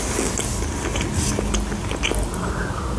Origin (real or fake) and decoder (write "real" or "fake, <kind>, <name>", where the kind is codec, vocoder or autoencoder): real